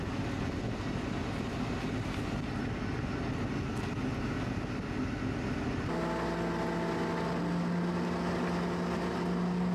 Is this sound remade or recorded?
recorded